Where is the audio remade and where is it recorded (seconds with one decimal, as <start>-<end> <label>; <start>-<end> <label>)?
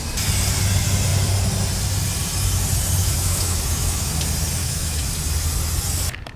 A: 0.0-3.0 recorded; 3.0-4.1 remade; 4.1-4.6 recorded; 4.6-5.1 remade; 5.1-6.4 recorded